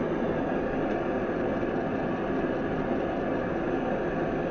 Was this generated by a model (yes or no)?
no